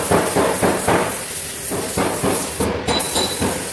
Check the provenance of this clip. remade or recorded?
recorded